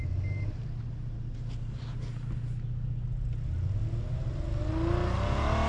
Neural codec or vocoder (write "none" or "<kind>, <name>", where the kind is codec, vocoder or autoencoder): none